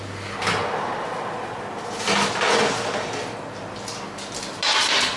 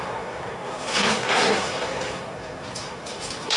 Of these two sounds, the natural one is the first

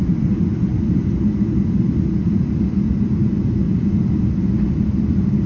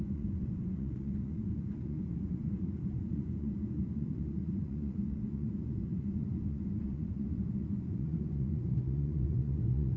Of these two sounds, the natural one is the first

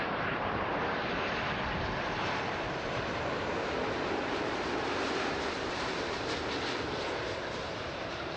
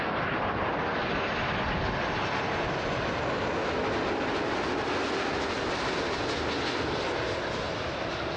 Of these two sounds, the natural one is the second